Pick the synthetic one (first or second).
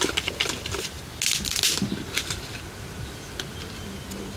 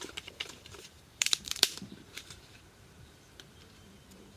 second